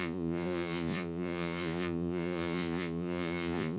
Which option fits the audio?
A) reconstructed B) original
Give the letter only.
A